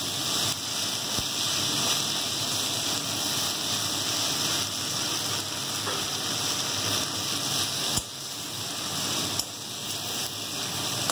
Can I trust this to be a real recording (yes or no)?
yes